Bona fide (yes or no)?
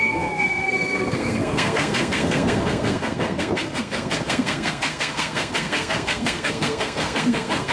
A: no